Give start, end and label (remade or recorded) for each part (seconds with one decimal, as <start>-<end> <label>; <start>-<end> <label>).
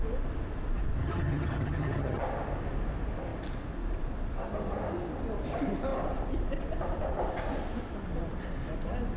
0.0-1.0 recorded; 1.0-2.2 remade; 2.2-9.2 recorded